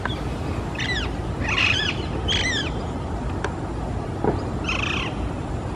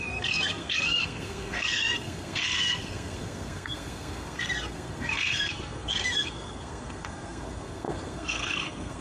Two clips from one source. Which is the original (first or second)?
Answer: first